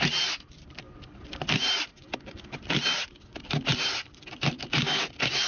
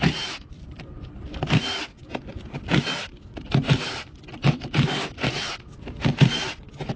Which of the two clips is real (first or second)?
first